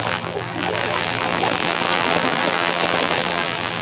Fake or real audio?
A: fake